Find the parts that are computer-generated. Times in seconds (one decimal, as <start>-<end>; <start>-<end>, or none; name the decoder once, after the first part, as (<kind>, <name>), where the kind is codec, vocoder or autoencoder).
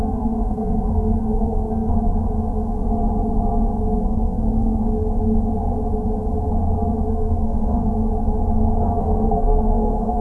0.0-1.9 (codec, SNAC); 4.0-4.8; 7.1-7.9; 9.0-10.2